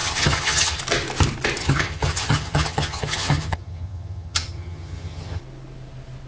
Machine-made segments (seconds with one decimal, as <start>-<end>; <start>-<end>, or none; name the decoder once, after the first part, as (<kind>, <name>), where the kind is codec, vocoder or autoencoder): 0.0-0.8 (vocoder, HiFi-GAN); 1.6-5.4